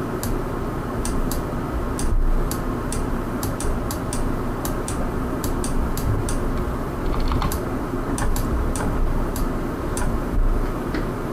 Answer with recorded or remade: recorded